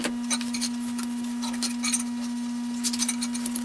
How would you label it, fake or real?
real